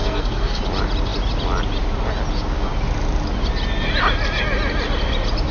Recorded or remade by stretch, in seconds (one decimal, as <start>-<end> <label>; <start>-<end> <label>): 0.0-0.6 remade; 0.6-5.5 recorded